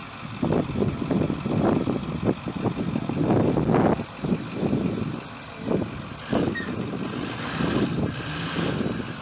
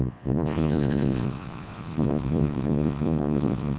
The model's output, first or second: second